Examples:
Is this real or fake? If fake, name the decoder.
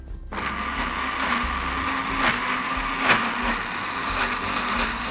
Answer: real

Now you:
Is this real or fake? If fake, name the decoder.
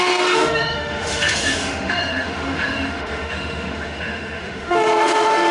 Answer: fake, autoencoder, DAC-VAE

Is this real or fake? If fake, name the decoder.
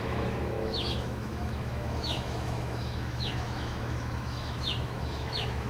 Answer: fake, autoencoder, DAC-VAE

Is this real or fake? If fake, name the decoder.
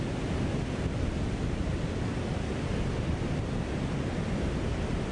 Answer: real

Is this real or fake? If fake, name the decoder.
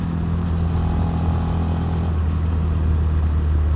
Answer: real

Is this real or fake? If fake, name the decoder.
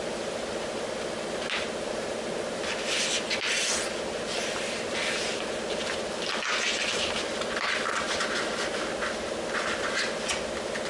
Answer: real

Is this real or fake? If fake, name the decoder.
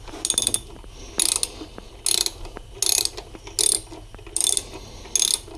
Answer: real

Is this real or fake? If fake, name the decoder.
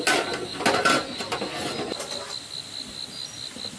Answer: real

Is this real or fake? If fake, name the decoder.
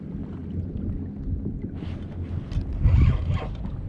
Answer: real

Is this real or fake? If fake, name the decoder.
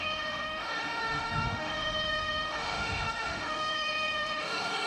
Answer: fake, autoencoder, DAC-VAE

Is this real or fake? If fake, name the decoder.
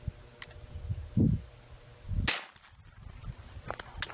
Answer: real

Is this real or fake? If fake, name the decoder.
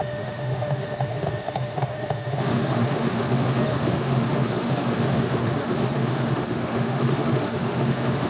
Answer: fake, autoencoder, DAC-VAE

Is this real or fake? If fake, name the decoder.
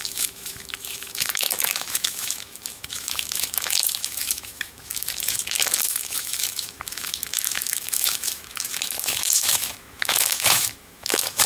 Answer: fake, autoencoder, DAC-VAE